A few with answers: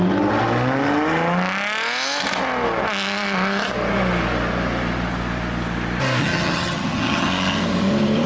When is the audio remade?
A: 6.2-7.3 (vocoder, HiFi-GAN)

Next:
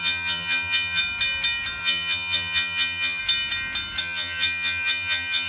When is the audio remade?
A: 0.0-1.0 (vocoder, HiFi-GAN); 1.8-3.2; 4.0-5.5

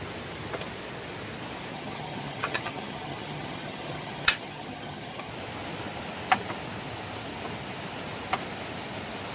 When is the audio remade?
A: 1.7-5.3 (vocoder, HiFi-GAN)

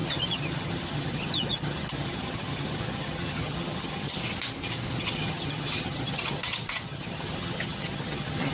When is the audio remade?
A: 0.0-4.2 (vocoder, HiFi-GAN); 5.0-8.5

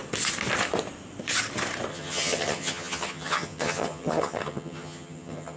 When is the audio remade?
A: 1.9-5.6 (vocoder, HiFi-GAN)

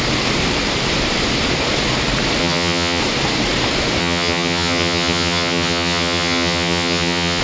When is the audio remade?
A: 2.4-3.0 (vocoder, HiFi-GAN); 4.0-7.4

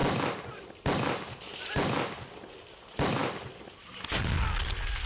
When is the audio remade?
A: none